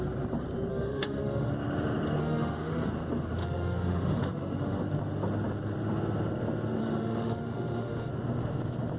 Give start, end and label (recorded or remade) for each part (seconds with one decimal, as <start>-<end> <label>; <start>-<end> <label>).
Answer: 0.0-0.7 recorded; 0.7-1.5 remade; 1.5-2.2 recorded; 2.2-2.9 remade; 2.9-3.4 recorded; 3.4-4.8 remade; 4.8-6.8 recorded; 6.8-8.1 remade; 8.1-9.0 recorded

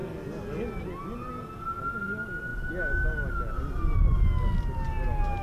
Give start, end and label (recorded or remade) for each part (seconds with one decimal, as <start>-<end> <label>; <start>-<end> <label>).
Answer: 0.0-5.4 recorded